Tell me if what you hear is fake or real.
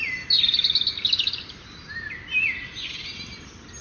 real